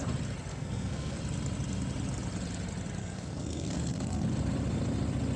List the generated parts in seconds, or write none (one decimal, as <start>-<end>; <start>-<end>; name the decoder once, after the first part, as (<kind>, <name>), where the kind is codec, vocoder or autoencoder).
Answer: 0.5-1.2 (codec, SNAC); 3.0-4.2